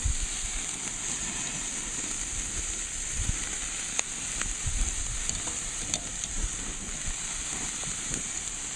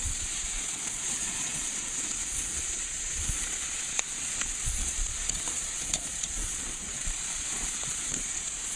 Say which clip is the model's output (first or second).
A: second